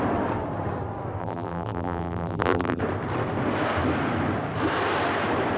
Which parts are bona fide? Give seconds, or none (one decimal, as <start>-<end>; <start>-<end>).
0.0-1.2; 2.8-5.6